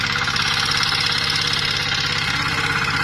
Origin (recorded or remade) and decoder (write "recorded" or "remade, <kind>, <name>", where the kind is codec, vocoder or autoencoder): recorded